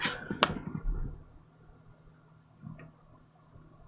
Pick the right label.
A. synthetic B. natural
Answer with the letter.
B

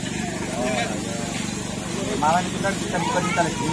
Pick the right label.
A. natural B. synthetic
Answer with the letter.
A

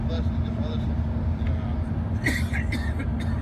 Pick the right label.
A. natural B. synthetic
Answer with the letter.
A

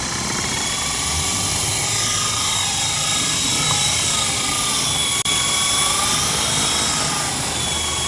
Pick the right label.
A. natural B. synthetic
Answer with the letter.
B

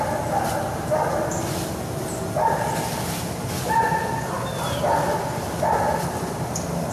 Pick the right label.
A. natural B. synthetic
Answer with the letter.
A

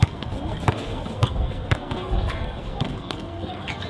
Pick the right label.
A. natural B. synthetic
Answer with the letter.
B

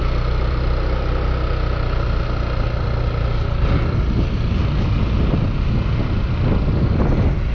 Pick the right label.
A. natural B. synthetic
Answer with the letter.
A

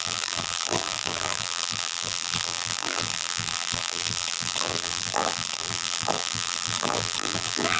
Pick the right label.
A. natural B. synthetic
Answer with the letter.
B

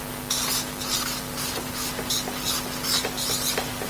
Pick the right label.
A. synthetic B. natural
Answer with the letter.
B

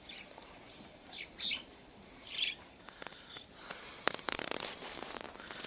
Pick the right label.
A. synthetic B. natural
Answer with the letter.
A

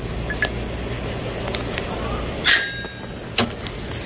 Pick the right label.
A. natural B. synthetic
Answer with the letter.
A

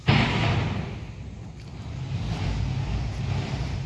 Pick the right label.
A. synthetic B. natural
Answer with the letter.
B